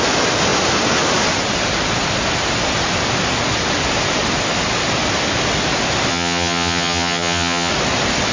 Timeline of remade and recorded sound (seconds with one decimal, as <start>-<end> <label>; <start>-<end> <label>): 0.0-6.1 recorded; 6.1-7.7 remade; 7.7-8.3 recorded